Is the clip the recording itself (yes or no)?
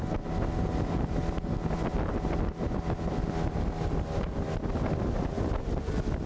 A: yes